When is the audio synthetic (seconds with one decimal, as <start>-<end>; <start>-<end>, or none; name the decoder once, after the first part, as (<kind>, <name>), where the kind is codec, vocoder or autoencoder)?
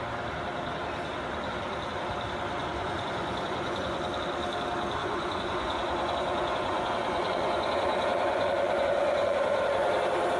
2.6-4.0 (vocoder, Vocos); 5.0-9.9